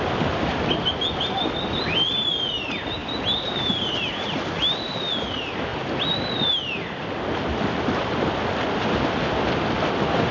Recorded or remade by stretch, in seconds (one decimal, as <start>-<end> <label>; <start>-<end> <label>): 0.0-10.3 recorded